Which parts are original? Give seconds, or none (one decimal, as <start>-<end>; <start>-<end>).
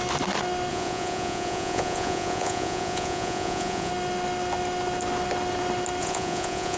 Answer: 0.0-0.7; 3.9-6.0